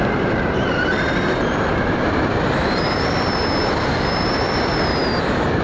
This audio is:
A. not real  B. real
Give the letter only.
A